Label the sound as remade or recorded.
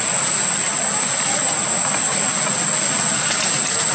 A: recorded